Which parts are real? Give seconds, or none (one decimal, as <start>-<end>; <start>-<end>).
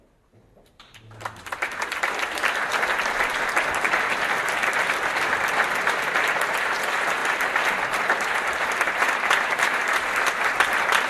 0.0-11.1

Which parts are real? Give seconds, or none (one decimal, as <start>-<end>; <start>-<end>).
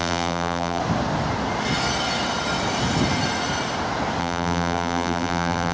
0.8-4.2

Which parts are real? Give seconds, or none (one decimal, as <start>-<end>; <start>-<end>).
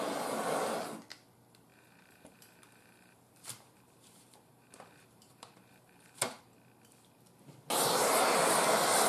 0.0-1.7; 6.4-9.1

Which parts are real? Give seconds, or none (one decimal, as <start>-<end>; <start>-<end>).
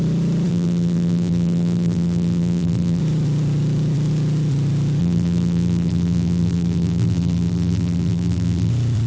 0.0-0.5; 3.0-5.0; 8.7-9.1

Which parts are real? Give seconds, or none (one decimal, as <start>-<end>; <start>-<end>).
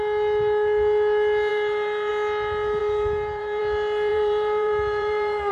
0.0-1.5; 2.1-2.8; 3.6-4.1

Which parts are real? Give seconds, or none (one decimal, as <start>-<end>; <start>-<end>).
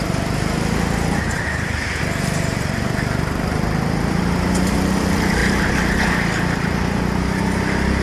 0.0-8.0